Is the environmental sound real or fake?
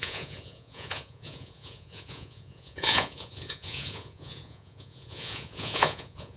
fake